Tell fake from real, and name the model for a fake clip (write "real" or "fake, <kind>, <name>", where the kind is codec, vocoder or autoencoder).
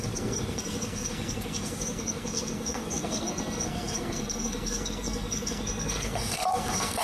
fake, codec, SNAC